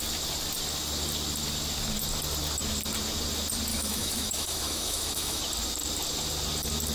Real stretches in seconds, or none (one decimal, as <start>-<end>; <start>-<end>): 0.0-3.7; 5.4-6.9